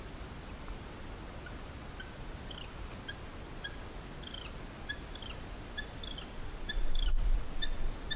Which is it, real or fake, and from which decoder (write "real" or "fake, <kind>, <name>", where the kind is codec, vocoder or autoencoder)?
real